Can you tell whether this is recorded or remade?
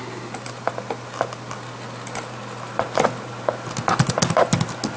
recorded